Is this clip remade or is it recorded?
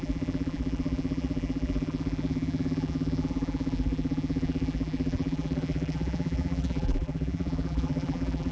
remade